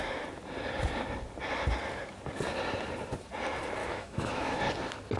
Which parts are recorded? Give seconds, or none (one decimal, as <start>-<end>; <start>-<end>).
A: 0.0-3.8; 4.6-5.2